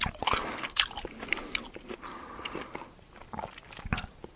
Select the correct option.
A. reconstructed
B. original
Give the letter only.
B